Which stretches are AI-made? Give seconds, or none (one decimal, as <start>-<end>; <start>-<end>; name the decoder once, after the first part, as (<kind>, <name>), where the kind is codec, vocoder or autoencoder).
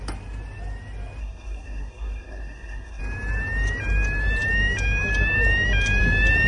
1.2-3.0 (codec, SNAC)